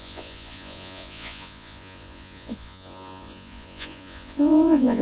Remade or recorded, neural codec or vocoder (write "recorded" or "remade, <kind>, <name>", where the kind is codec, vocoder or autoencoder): remade, vocoder, Vocos